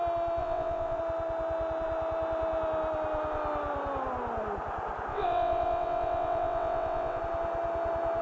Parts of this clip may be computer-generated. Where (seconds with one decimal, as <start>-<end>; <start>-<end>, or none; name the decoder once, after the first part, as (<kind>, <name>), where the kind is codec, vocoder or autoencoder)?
0.4-1.0 (vocoder, WaveNeXt); 5.1-7.2